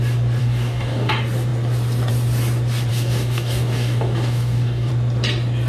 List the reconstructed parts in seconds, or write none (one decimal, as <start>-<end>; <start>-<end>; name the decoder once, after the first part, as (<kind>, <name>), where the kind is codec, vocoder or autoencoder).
0.4-1.1 (codec, DAC); 2.9-4.9